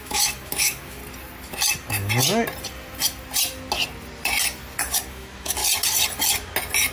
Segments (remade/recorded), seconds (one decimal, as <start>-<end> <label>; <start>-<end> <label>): 0.0-1.0 remade; 1.0-5.1 recorded; 5.1-5.6 remade; 5.6-6.9 recorded